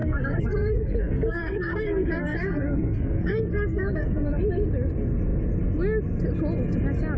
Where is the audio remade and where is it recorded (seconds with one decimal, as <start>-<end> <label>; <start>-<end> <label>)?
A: 0.0-4.3 remade; 4.3-7.2 recorded